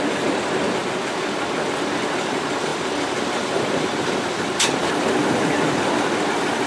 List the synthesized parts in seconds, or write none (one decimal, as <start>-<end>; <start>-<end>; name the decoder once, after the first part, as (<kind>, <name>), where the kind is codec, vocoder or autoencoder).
0.0-0.8 (vocoder, BigVGAN v2); 2.0-6.7